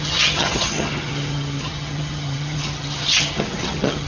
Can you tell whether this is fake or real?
fake